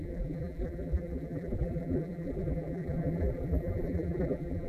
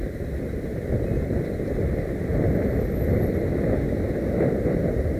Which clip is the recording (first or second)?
second